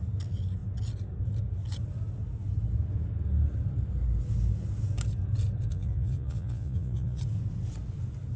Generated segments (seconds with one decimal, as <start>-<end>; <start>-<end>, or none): 5.7-7.2